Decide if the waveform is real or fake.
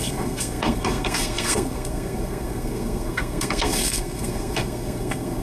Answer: fake